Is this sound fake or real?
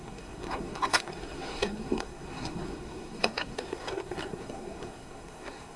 fake